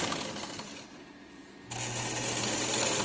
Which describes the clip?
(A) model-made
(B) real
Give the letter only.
B